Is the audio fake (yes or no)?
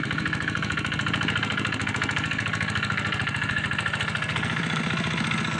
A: yes